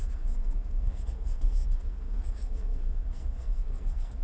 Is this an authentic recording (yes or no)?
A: no